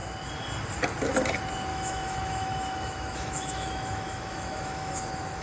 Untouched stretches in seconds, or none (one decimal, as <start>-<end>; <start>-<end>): 0.0-1.7; 4.9-5.4